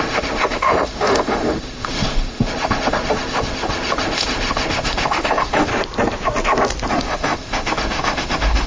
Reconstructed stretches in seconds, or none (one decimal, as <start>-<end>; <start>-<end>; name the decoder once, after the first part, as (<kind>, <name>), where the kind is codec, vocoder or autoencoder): 0.0-5.7 (autoencoder, DAC-VAE); 6.9-8.7